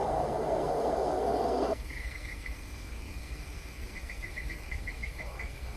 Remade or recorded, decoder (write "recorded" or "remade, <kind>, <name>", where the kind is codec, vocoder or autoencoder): remade, codec, SNAC